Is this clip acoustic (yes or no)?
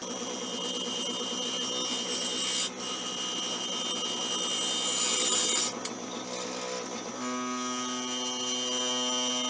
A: yes